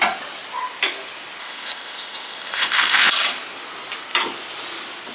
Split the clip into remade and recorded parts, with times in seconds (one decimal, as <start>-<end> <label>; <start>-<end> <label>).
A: 0.0-1.4 recorded; 1.4-3.1 remade; 3.1-5.1 recorded